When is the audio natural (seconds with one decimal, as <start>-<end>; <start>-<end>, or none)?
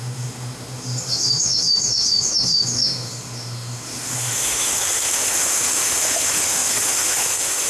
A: none